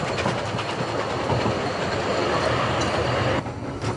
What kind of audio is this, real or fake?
real